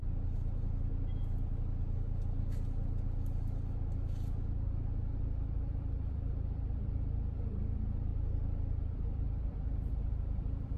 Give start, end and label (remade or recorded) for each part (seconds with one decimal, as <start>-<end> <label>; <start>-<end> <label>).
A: 0.0-5.2 recorded; 5.2-8.1 remade; 8.1-8.8 recorded; 8.8-10.8 remade